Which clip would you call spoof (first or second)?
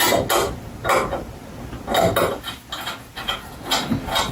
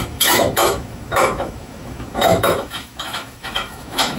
second